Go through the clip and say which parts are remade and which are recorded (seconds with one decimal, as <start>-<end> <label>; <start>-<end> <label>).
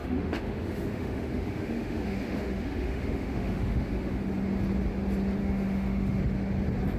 0.0-4.2 remade; 4.2-5.4 recorded; 5.4-6.2 remade; 6.2-7.0 recorded